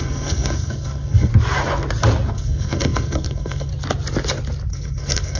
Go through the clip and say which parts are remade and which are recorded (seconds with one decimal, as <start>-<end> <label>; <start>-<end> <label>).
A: 0.0-1.3 remade; 1.3-2.3 recorded; 2.3-3.7 remade; 3.7-4.7 recorded; 4.7-5.4 remade

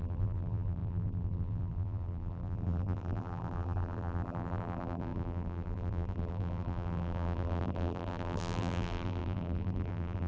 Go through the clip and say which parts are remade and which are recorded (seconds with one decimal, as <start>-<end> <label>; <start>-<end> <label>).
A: 0.0-10.3 remade

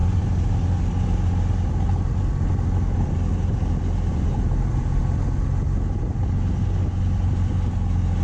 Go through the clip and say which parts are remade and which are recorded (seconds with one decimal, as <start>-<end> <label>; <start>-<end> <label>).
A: 0.0-0.5 remade; 0.5-4.1 recorded; 4.1-5.0 remade; 5.0-8.2 recorded

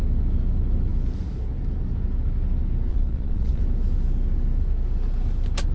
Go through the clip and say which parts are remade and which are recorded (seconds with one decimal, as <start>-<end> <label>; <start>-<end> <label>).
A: 0.0-2.9 recorded; 2.9-3.6 remade; 3.6-5.7 recorded